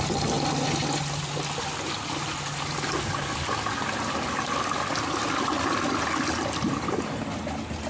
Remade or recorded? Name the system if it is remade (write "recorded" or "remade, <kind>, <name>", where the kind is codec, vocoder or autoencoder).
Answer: recorded